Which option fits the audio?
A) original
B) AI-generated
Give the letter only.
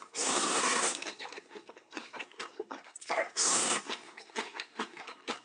B